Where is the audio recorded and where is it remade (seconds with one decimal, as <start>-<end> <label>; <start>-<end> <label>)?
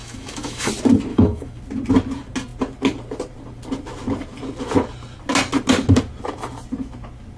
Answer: 0.0-0.7 remade; 0.7-1.1 recorded; 1.1-1.6 remade; 1.6-7.4 recorded